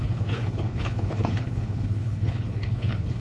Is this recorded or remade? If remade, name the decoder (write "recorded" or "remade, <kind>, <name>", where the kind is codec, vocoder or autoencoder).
remade, codec, HILCodec